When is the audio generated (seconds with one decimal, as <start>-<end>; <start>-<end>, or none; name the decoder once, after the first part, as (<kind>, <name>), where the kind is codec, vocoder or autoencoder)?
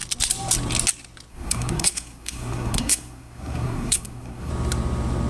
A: 1.3-4.5 (codec, SNAC)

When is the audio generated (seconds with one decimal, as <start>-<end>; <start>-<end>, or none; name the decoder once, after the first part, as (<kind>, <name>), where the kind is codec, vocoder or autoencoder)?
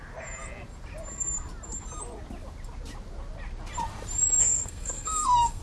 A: 4.4-5.6 (codec, SNAC)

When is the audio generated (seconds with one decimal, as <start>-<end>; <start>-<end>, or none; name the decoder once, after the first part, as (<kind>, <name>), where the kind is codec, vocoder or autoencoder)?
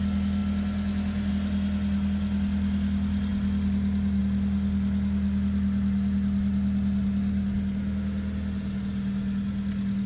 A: none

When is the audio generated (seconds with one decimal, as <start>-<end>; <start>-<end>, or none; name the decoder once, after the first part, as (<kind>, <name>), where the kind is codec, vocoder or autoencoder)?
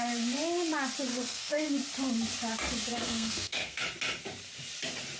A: 1.1-1.7 (codec, SNAC); 2.9-3.8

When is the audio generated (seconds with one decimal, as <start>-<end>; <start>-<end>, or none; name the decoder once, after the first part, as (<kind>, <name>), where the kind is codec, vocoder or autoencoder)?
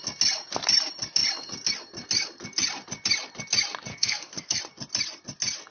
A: 3.9-4.6 (codec, SNAC)